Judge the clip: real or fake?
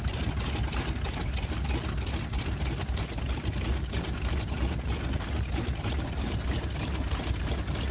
real